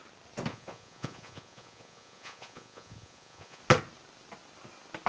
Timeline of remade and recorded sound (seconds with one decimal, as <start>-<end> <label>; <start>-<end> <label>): 0.0-0.5 recorded; 0.5-3.6 remade; 3.6-5.1 recorded